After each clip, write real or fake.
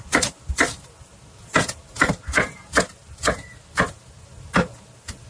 real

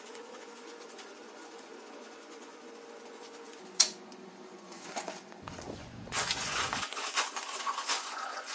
fake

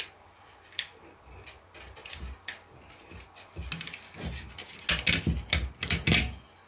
real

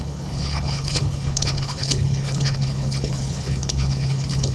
fake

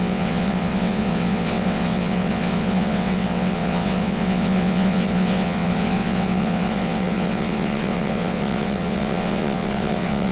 fake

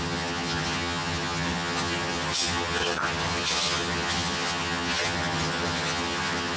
fake